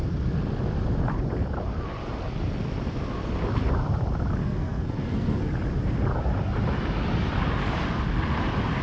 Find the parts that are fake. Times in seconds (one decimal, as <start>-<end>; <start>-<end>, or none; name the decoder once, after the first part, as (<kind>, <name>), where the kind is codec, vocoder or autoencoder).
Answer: 4.4-5.5 (codec, SNAC)